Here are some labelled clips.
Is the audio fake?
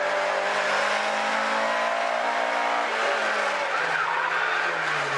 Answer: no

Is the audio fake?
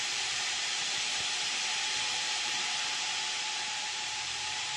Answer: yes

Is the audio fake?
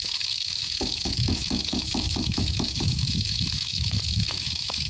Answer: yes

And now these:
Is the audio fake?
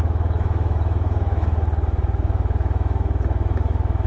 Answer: yes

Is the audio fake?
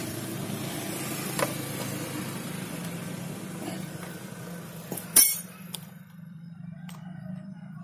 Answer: yes